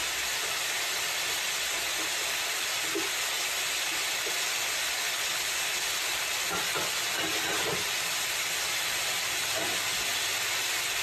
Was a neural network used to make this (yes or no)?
no